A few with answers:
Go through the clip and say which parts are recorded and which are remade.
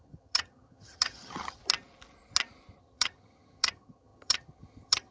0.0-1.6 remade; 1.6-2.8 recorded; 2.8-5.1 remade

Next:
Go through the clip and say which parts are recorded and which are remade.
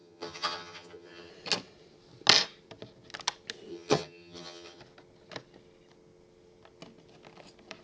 0.0-1.3 remade; 1.3-3.7 recorded; 3.7-4.8 remade; 4.8-7.8 recorded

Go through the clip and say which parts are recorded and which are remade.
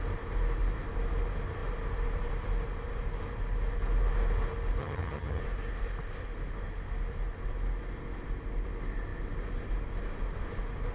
0.0-4.8 recorded; 4.8-5.4 remade; 5.4-10.9 recorded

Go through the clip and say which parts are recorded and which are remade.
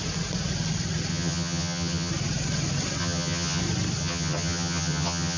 0.0-1.1 recorded; 1.1-2.1 remade; 2.1-3.0 recorded; 3.0-3.6 remade; 3.6-4.0 recorded; 4.0-5.4 remade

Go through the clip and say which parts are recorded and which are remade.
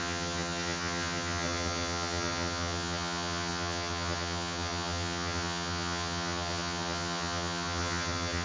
0.0-8.4 remade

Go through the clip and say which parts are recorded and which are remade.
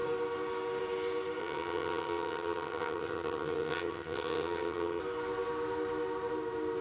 0.0-1.4 recorded; 1.4-5.0 remade; 5.0-6.8 recorded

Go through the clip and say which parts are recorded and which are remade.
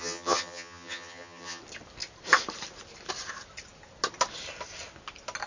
0.0-1.6 remade; 1.6-5.5 recorded